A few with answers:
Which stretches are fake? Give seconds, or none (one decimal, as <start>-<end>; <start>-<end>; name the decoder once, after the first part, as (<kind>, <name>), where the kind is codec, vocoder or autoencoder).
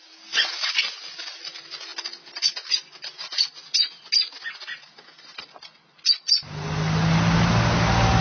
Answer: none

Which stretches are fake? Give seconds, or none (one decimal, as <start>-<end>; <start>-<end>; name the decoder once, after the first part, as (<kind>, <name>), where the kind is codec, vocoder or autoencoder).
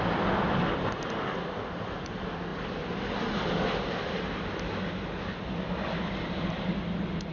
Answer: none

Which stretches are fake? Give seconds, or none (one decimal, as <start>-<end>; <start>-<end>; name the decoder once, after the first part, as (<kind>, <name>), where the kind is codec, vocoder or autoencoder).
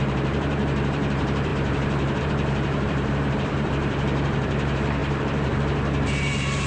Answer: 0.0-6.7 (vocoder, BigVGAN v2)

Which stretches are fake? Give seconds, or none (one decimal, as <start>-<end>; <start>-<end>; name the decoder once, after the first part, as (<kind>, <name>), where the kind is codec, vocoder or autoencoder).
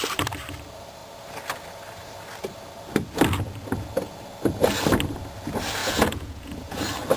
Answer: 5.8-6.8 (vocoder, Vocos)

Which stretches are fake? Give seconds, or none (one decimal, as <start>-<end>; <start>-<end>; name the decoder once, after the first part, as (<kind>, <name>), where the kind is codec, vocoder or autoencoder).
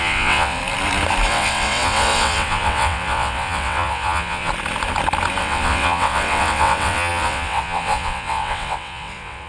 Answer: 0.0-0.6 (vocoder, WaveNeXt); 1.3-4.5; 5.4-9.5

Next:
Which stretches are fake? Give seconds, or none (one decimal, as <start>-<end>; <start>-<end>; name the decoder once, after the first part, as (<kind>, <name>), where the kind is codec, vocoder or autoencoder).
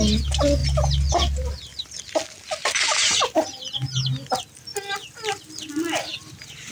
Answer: none